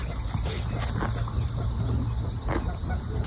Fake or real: real